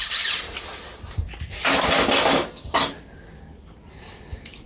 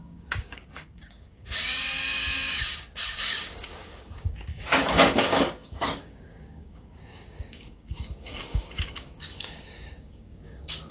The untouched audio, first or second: first